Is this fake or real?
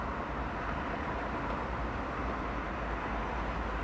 real